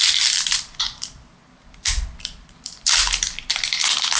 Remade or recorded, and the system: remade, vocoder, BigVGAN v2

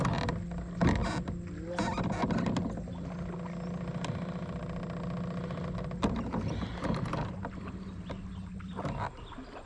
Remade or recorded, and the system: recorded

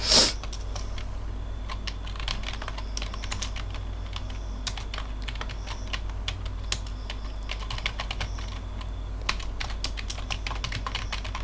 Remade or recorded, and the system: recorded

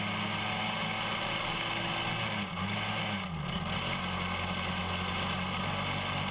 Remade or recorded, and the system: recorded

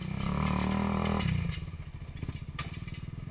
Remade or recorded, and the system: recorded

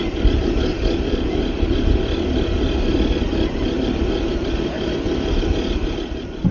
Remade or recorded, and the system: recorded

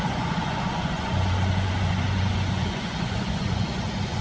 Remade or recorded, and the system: remade, vocoder, Vocos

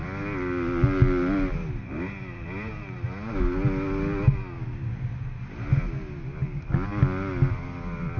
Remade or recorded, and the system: recorded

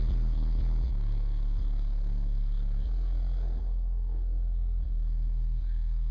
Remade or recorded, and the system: remade, codec, SNAC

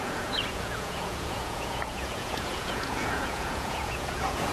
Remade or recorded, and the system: remade, vocoder, Vocos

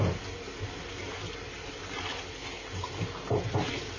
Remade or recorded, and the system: recorded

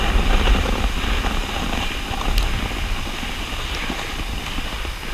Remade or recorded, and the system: recorded